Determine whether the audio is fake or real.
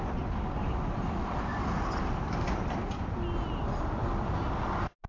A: real